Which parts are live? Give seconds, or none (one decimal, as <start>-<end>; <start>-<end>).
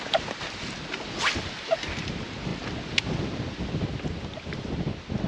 0.0-5.3